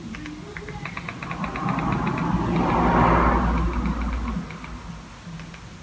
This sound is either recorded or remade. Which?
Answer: recorded